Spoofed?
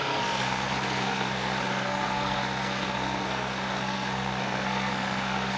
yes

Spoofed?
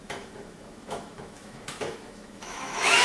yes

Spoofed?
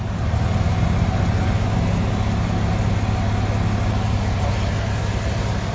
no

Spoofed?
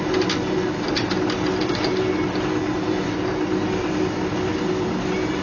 no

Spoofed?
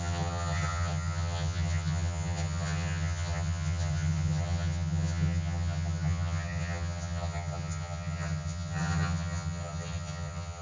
yes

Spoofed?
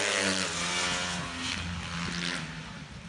no